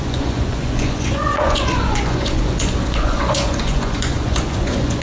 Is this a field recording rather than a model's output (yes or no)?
no